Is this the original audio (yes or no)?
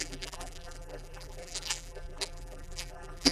no